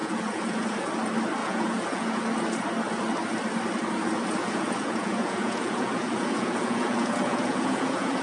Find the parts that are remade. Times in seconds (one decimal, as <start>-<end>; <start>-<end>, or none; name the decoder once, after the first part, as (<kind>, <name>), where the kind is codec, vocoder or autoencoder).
0.0-0.9 (vocoder, Vocos); 1.4-2.2; 4.4-8.2